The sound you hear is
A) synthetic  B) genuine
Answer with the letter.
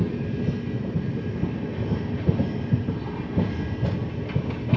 B